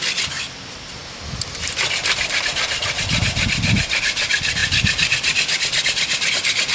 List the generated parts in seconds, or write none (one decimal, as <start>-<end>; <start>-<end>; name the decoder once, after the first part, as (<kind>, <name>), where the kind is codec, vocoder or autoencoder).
none